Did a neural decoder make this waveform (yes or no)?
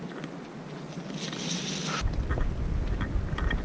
no